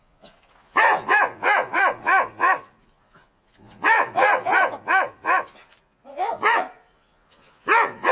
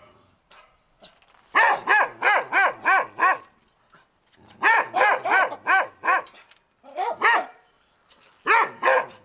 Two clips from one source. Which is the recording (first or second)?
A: second